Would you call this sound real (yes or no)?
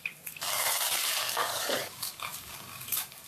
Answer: no